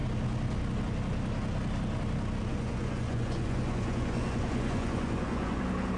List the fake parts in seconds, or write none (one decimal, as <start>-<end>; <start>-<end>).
2.5-5.6